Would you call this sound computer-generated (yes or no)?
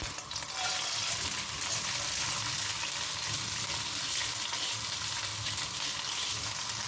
no